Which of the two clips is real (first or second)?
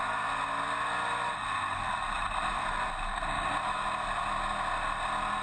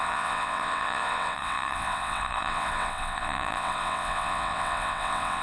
first